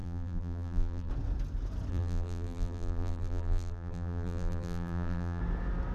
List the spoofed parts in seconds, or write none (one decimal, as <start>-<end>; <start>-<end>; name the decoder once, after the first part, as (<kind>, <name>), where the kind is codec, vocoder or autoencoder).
0.0-1.1 (vocoder, BigVGAN v2); 1.9-5.4